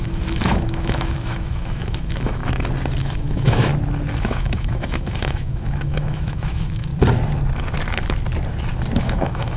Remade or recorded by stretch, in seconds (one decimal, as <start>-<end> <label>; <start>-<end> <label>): 0.0-2.4 remade; 2.4-3.0 recorded; 3.0-3.7 remade; 3.7-4.2 recorded; 4.2-6.9 remade; 6.9-9.0 recorded; 9.0-9.6 remade